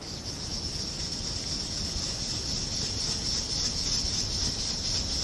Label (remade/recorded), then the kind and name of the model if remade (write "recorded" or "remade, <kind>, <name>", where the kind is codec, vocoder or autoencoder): recorded